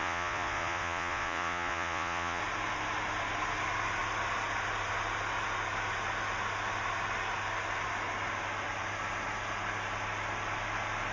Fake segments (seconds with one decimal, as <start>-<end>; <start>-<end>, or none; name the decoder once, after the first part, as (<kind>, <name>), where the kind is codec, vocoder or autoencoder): 0.0-2.4 (vocoder, Vocos)